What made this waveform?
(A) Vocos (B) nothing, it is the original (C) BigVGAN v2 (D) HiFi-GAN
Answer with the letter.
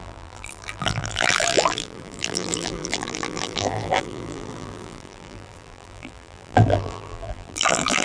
C